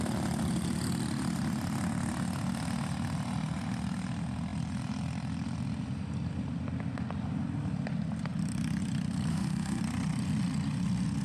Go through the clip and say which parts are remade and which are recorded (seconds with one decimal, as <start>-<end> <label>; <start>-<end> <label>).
0.0-9.3 recorded; 9.3-9.8 remade; 9.8-11.2 recorded